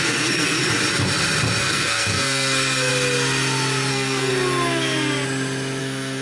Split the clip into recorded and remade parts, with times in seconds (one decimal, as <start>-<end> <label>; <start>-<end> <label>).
0.0-0.6 remade; 0.6-1.6 recorded; 1.6-2.9 remade; 2.9-3.9 recorded; 3.9-4.3 remade; 4.3-5.8 recorded; 5.8-6.2 remade